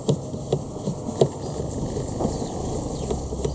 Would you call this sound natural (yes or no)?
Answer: yes